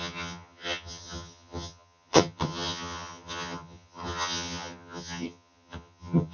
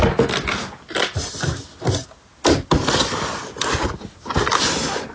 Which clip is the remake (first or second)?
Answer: first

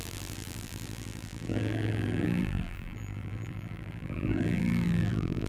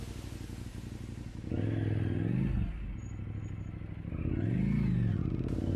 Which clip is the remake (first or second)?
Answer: first